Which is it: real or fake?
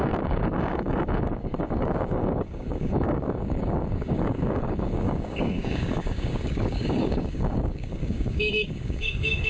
fake